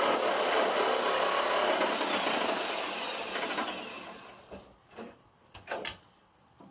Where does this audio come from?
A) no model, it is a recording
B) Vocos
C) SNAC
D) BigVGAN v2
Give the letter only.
A